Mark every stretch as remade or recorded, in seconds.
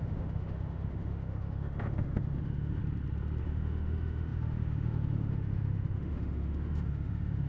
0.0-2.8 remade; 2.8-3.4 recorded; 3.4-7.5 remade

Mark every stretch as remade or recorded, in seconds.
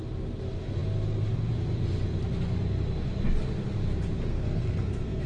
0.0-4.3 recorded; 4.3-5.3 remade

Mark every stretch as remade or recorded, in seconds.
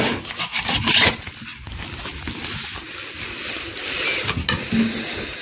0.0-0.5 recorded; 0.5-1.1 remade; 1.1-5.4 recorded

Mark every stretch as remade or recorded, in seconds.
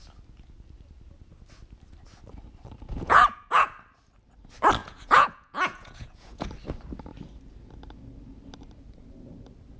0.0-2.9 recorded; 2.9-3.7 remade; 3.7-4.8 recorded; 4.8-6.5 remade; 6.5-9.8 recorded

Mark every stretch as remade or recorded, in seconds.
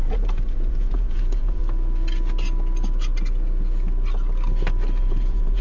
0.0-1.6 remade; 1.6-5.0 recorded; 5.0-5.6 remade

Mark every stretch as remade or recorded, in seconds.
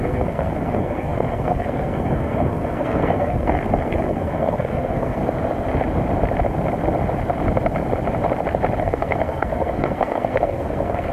0.0-5.2 remade; 5.2-8.8 recorded; 8.8-11.1 remade